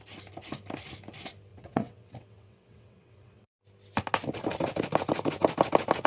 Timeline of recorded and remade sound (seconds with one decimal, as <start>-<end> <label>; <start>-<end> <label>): 0.0-1.5 recorded; 1.5-3.5 remade; 3.5-6.1 recorded